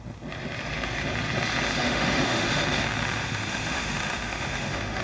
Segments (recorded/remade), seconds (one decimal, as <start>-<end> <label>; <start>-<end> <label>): 0.0-1.8 recorded; 1.8-2.6 remade; 2.6-3.2 recorded; 3.2-5.0 remade